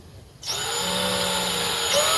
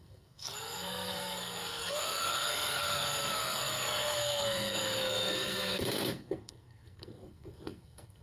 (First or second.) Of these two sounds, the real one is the first